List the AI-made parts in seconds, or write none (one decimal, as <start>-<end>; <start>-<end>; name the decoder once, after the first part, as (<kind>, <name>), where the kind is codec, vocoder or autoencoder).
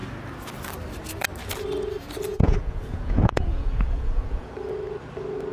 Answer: 2.3-4.5 (vocoder, Vocos)